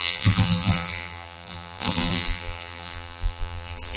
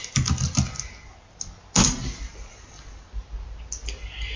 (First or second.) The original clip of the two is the second